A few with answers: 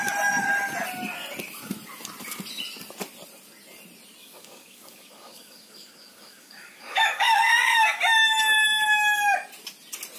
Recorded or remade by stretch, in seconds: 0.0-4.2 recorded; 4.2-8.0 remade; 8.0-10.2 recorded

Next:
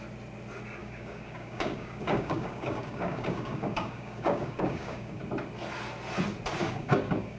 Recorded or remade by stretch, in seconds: 0.0-0.8 recorded; 0.8-5.2 remade; 5.2-6.6 recorded; 6.6-7.4 remade

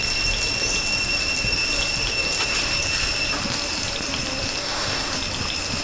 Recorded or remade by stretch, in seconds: 0.0-4.6 recorded; 4.6-5.1 remade; 5.1-5.8 recorded

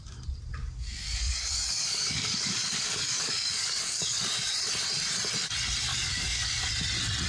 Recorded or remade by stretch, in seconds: 0.0-0.6 recorded; 0.6-4.5 remade; 4.5-5.9 recorded; 5.9-6.7 remade; 6.7-7.3 recorded

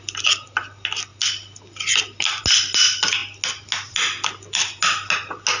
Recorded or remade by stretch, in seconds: 0.0-5.6 recorded